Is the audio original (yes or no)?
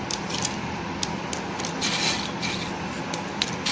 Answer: yes